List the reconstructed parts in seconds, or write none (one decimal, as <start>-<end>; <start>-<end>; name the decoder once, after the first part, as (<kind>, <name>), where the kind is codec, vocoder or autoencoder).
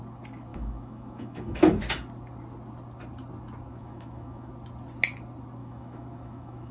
0.5-1.8 (autoencoder, DAC-VAE); 3.7-4.5; 5.6-6.7